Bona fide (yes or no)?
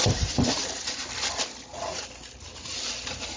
yes